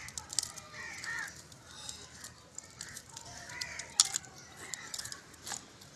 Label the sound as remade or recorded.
recorded